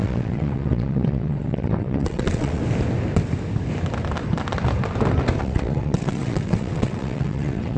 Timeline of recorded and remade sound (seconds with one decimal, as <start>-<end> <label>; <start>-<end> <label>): 0.0-2.6 remade; 2.6-5.4 recorded; 5.4-7.8 remade